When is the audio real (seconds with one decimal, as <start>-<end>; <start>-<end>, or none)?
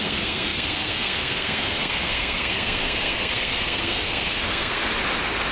4.9-5.5